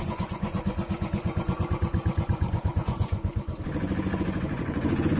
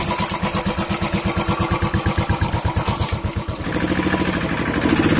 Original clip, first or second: second